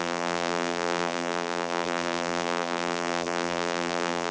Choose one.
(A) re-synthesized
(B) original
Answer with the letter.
A